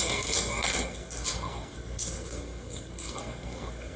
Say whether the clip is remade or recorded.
remade